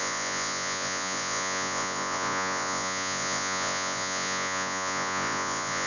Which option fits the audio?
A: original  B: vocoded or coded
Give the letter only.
B